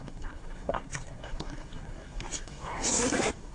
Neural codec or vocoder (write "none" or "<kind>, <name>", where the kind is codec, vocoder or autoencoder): codec, SNAC